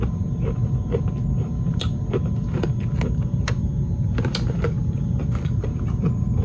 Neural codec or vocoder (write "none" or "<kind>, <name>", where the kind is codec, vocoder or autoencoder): none